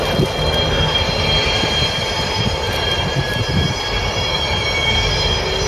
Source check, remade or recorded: recorded